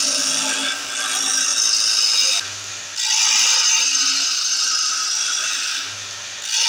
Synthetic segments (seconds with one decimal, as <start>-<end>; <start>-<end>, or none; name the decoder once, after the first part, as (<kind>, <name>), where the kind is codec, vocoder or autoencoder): none